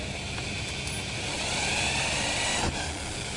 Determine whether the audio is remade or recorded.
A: recorded